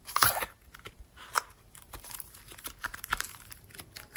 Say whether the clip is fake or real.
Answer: fake